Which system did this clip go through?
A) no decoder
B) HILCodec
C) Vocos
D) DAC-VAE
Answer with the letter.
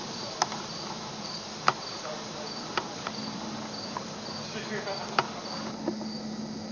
A